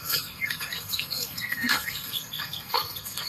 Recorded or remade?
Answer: remade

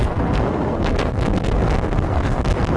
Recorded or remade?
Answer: remade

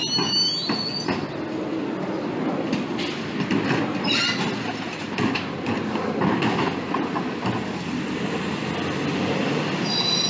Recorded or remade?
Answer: recorded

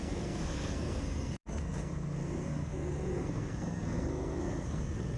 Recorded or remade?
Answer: remade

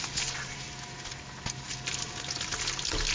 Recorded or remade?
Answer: recorded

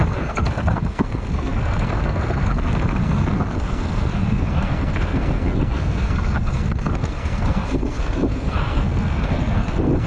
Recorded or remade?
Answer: remade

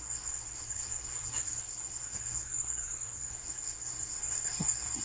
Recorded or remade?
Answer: remade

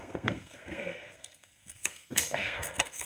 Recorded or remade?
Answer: remade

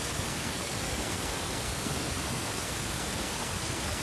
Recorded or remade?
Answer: remade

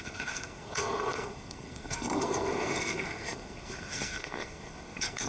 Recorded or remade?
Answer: remade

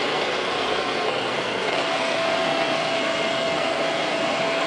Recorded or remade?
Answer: remade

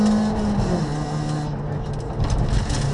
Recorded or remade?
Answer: recorded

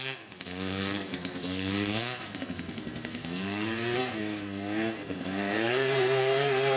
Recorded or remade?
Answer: remade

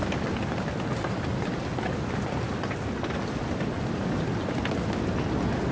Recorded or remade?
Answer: recorded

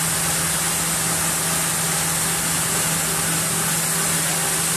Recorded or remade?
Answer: recorded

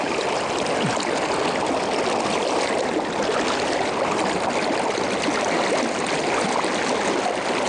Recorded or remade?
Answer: recorded